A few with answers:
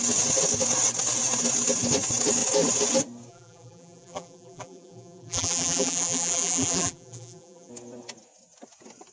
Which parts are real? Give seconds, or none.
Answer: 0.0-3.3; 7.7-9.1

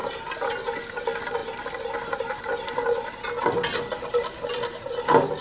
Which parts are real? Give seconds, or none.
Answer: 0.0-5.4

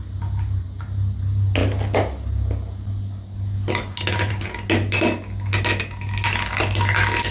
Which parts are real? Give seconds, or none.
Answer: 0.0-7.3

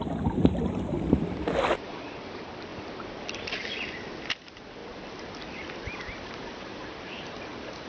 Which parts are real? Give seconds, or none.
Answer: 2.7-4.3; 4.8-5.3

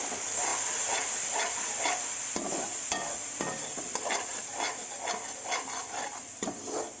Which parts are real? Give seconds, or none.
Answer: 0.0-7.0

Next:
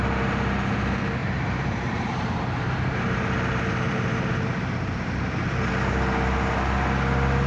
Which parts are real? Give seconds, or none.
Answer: 0.0-1.2; 5.7-7.5